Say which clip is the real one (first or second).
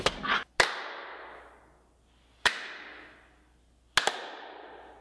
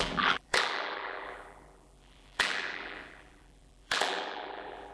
first